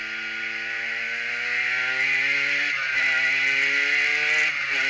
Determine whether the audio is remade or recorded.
recorded